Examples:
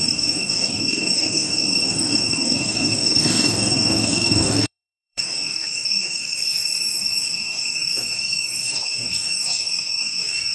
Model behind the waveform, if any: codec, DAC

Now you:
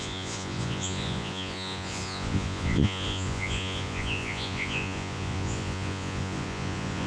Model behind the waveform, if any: vocoder, Vocos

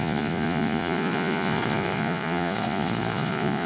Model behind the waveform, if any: vocoder, Vocos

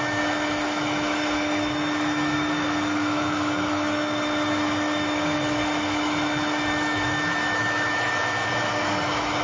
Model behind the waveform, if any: autoencoder, DAC-VAE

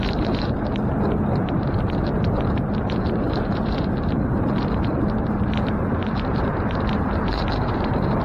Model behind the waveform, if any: vocoder, BigVGAN v2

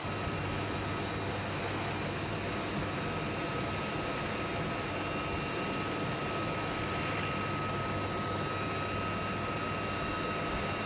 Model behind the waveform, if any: none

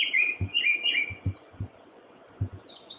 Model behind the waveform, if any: vocoder, Vocos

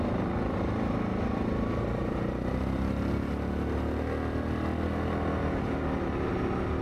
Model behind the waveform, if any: none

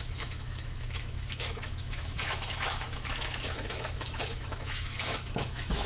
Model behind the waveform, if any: autoencoder, DAC-VAE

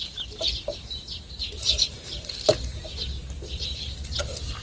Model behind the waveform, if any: none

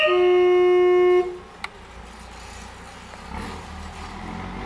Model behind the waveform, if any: none